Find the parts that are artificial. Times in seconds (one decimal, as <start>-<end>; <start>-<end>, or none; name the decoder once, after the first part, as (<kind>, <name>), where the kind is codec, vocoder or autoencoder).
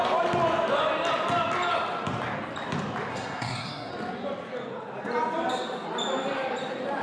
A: 3.1-3.9 (codec, SNAC)